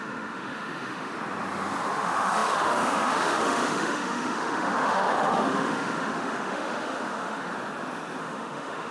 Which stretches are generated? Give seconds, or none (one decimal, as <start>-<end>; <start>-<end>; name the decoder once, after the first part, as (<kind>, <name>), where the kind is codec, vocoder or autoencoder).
0.0-1.1 (autoencoder, DAC-VAE); 1.9-7.5; 8.2-8.9